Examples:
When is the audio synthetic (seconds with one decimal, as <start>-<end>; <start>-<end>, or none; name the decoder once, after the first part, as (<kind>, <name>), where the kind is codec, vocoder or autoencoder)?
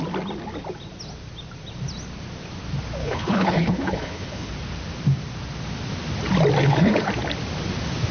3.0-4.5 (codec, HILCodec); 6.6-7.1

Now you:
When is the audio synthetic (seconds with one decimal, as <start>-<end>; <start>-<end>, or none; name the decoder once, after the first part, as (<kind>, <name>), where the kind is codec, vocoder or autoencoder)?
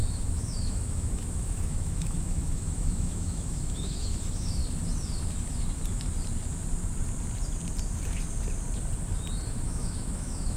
0.0-4.6 (autoencoder, DAC-VAE); 9.5-10.6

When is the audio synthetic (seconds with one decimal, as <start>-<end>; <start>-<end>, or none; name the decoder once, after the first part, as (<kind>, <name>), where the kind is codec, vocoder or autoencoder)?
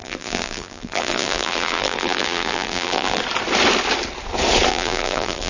0.0-3.2 (vocoder, BigVGAN v2); 4.7-5.5